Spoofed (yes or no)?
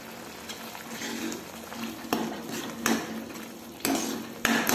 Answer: no